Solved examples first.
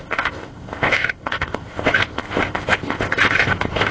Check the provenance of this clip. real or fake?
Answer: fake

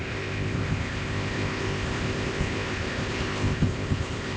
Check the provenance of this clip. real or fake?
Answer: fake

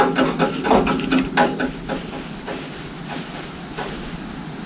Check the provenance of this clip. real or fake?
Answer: real